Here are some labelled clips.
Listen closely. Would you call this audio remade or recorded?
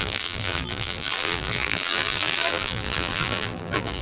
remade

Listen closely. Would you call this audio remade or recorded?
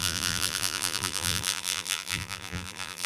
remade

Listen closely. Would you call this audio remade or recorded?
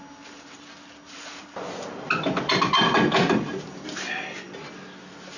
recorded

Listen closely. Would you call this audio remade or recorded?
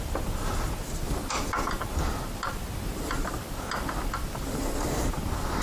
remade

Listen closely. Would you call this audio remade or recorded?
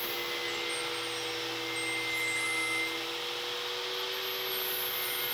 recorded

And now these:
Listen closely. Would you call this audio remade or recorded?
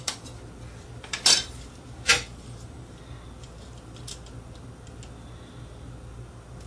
recorded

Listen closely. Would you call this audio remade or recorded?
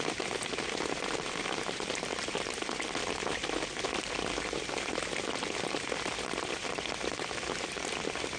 recorded